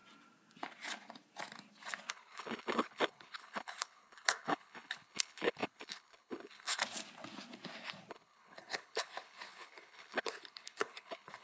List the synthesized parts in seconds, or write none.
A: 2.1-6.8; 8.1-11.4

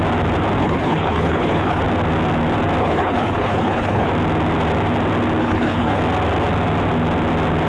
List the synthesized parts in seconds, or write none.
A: 0.6-1.8; 2.8-4.1; 5.4-6.0

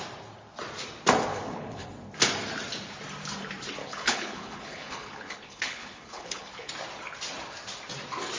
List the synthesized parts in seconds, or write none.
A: 1.3-1.9; 3.8-6.7

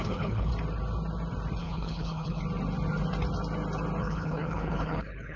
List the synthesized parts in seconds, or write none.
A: 0.0-0.5; 1.6-2.4; 4.0-5.4